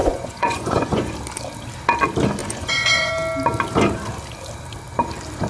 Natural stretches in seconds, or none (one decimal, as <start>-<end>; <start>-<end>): 1.1-2.4; 3.1-5.5